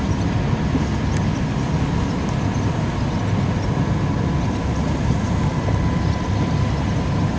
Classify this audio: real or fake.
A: real